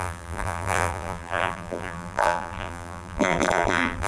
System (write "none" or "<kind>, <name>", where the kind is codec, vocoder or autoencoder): vocoder, BigVGAN v2